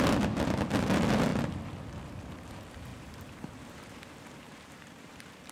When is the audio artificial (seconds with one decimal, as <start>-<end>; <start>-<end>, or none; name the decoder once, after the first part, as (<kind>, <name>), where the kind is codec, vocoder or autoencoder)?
2.9-5.5 (vocoder, BigVGAN v2)